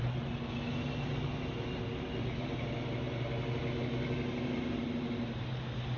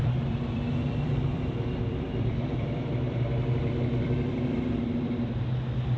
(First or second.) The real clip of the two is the first